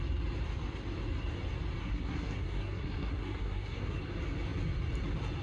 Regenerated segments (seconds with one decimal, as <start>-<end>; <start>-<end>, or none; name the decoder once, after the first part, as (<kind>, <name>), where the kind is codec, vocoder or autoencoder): 1.8-4.0 (codec, SNAC)